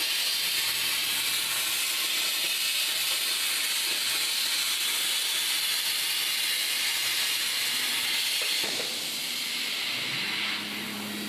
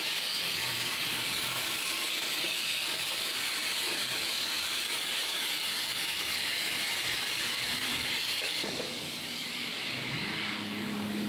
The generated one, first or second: second